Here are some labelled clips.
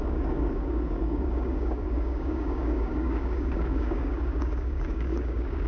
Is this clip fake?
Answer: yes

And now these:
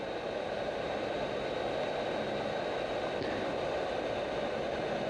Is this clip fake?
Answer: no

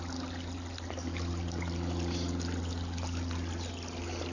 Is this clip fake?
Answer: no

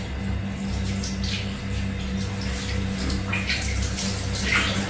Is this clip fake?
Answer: no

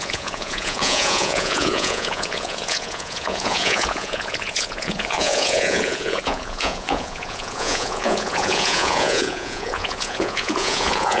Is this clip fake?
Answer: yes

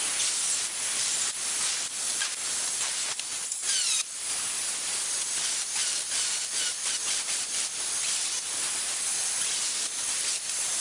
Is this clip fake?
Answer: no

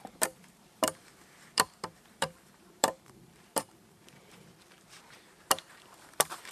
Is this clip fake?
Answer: yes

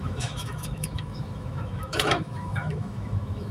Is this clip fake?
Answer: yes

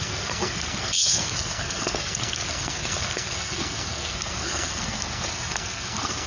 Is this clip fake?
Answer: yes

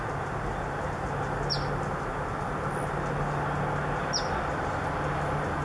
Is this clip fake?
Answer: no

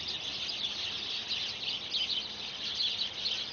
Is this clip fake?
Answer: no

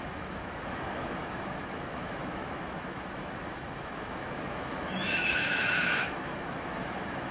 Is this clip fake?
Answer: yes